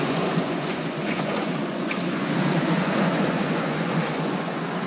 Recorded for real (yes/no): no